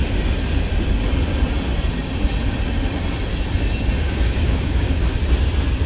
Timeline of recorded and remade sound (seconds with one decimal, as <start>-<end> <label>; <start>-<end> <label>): 0.0-4.0 recorded; 4.0-5.0 remade; 5.0-5.9 recorded